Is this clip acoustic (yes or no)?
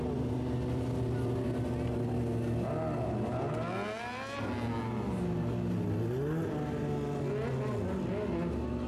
yes